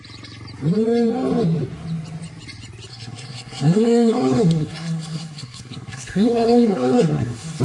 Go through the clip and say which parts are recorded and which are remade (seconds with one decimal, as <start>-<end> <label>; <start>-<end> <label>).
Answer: 0.0-2.9 recorded; 2.9-7.6 remade